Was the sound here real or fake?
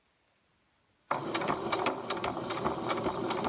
real